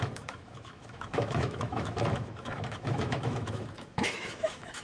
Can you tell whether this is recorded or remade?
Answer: remade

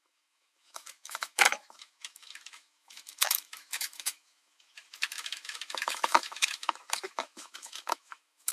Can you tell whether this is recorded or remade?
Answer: remade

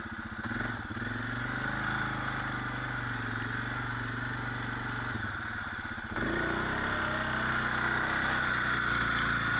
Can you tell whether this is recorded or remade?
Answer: recorded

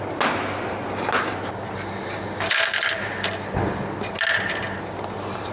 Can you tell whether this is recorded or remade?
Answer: recorded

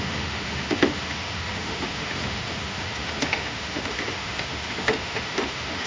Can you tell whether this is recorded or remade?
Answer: remade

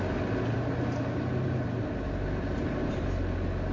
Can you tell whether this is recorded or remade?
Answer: recorded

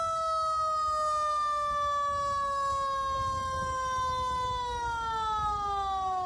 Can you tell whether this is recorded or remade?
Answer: recorded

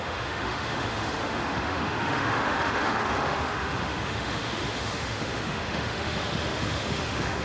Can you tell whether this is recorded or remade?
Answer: remade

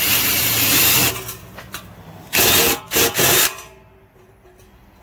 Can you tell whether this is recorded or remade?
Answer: recorded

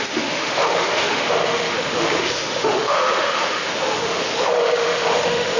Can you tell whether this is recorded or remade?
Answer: remade